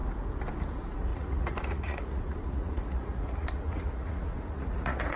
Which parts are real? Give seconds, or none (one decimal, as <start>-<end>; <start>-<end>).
0.0-0.7